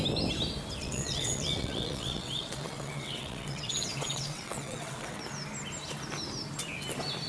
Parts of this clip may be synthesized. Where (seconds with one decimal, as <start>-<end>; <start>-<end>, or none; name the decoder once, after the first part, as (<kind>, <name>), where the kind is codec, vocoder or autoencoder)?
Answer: 0.8-5.2 (vocoder, WaveNeXt)